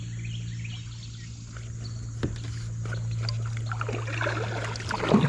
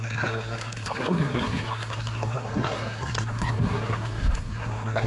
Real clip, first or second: first